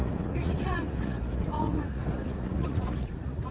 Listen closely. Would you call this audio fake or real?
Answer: fake